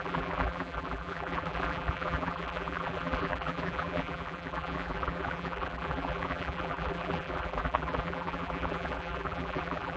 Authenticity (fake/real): fake